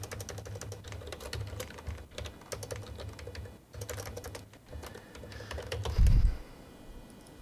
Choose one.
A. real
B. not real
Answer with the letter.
A